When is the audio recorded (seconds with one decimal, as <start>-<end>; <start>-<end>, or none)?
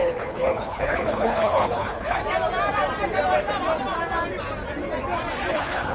2.2-5.5